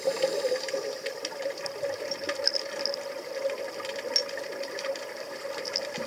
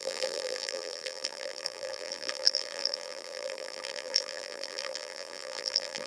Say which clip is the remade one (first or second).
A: second